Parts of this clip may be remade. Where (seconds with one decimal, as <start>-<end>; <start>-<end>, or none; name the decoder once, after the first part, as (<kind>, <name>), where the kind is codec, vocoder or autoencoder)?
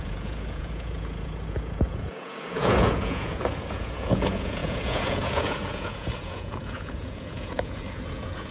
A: 0.0-8.5 (vocoder, Vocos)